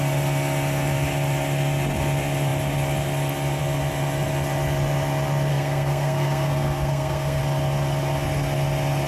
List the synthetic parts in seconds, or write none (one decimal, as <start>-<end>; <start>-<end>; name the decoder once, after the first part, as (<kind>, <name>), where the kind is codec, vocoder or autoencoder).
5.5-7.4 (codec, SNAC)